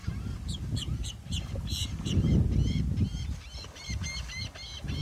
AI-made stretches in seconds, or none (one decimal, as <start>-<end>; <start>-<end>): 0.0-2.4